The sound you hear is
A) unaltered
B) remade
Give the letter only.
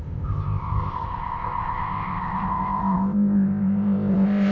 B